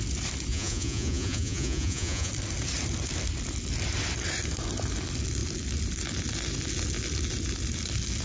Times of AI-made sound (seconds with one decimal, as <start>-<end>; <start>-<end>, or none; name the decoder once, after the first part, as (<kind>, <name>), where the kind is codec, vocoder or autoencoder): 0.5-2.3 (vocoder, Vocos)